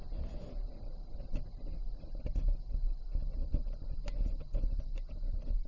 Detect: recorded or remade recorded